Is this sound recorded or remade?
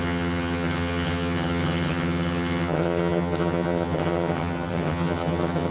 remade